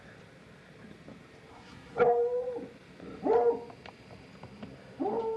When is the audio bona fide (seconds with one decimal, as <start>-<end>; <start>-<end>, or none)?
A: 0.0-1.5; 2.0-5.4